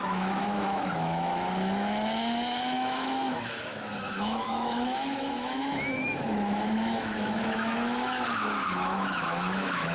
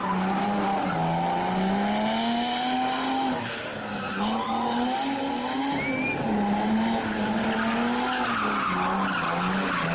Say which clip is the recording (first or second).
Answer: second